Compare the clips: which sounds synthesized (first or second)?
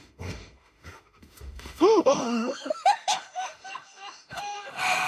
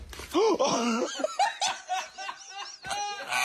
first